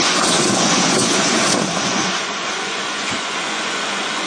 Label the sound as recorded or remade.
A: remade